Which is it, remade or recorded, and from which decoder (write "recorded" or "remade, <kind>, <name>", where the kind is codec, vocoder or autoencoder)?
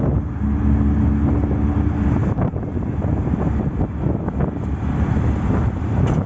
recorded